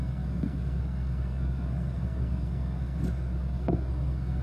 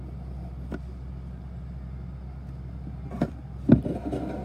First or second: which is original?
second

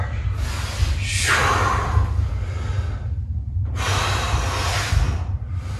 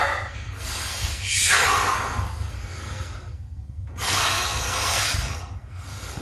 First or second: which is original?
first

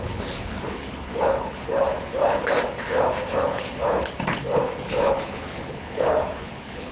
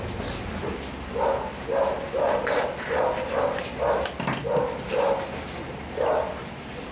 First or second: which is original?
second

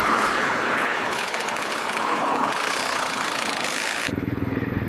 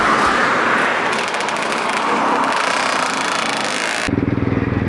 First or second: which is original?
second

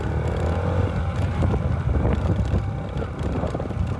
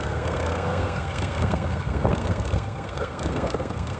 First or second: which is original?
first